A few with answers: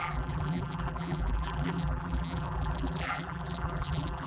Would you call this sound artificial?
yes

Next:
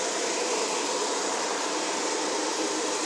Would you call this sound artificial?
yes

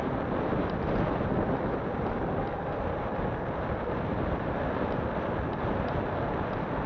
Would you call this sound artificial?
yes